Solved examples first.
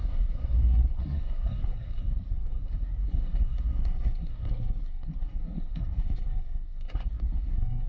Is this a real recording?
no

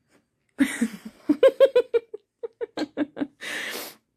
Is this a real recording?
yes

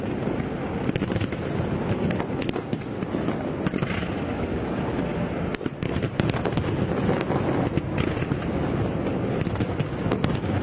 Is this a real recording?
yes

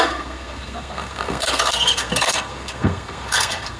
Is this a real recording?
no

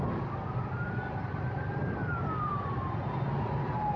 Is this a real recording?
yes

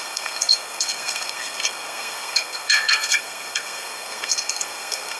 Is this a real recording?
no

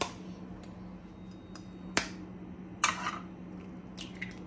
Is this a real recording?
yes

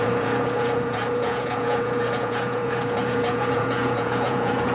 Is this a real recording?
no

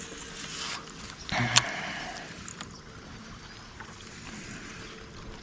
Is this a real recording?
yes